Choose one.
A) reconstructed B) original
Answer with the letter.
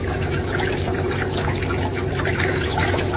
A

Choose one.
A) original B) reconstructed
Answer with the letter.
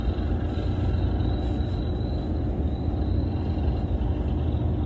A